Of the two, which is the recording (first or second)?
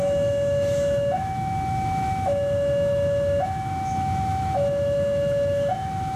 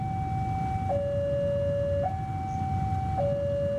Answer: second